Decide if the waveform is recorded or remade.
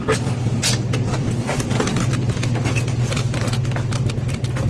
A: recorded